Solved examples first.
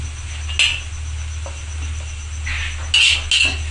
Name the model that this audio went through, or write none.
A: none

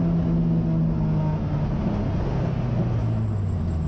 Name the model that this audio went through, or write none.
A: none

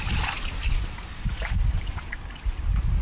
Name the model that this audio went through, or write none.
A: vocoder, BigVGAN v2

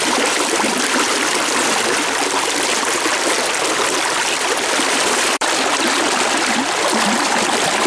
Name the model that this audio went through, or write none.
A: vocoder, BigVGAN v2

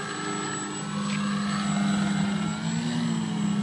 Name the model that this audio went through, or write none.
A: none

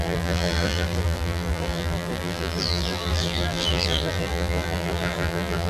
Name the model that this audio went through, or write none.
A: vocoder, BigVGAN v2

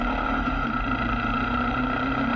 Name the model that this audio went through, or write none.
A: vocoder, BigVGAN v2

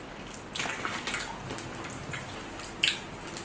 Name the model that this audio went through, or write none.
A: none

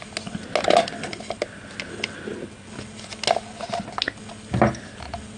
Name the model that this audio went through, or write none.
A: none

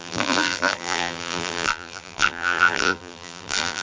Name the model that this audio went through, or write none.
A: vocoder, BigVGAN v2